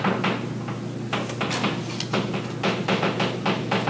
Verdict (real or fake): real